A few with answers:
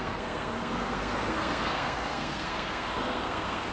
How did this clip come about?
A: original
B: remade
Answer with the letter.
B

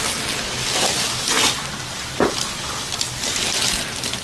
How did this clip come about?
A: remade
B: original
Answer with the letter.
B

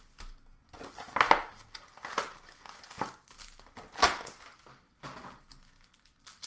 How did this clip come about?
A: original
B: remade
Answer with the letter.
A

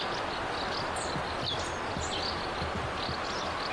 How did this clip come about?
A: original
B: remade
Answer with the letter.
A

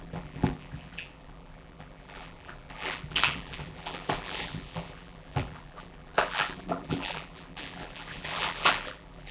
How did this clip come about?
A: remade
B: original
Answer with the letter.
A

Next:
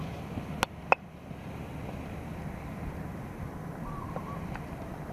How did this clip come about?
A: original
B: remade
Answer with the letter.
A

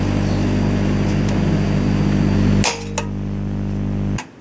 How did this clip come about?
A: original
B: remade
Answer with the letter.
A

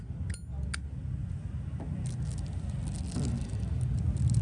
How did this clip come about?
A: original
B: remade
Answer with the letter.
A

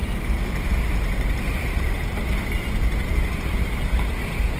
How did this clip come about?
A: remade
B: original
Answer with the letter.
B